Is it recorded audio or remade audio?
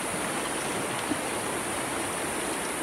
recorded